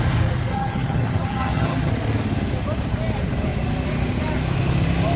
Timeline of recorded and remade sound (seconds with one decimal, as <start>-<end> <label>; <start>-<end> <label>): 0.0-0.5 recorded; 0.5-1.9 remade; 1.9-5.2 recorded